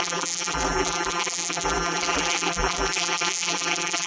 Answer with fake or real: fake